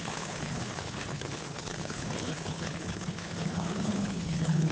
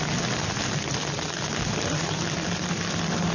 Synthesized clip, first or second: first